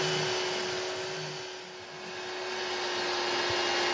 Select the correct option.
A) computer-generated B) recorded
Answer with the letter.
B